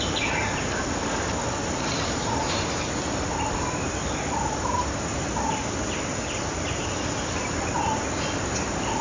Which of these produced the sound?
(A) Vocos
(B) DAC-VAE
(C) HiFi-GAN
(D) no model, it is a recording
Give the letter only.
D